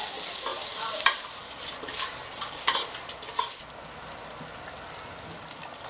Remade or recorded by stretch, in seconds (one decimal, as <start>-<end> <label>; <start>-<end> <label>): 0.0-0.5 recorded; 0.5-3.4 remade; 3.4-5.9 recorded